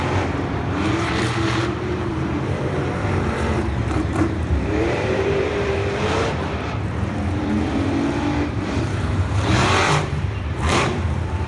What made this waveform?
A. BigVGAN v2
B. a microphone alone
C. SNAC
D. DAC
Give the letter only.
A